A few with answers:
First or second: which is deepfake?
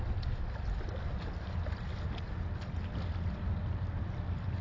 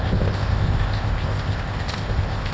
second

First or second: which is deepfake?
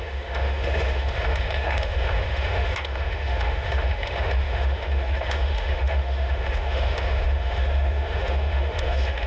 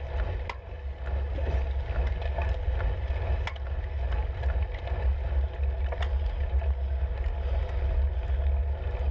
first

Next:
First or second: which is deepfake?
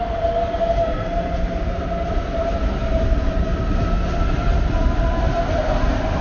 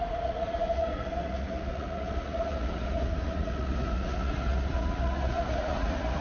second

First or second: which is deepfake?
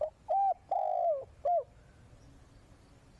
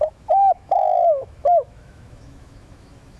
second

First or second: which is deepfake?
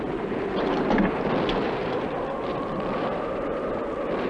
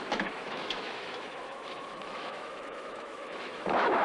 second